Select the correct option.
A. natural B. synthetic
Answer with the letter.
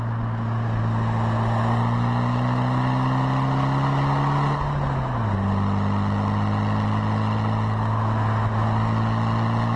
A